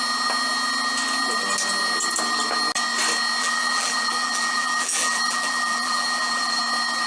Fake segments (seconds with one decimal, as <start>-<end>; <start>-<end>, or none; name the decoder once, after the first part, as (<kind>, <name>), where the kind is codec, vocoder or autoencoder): 3.4-6.6 (vocoder, BigVGAN v2)